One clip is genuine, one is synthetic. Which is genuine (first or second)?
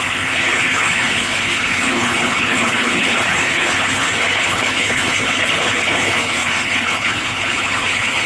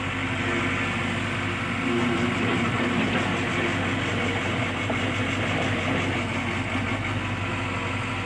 second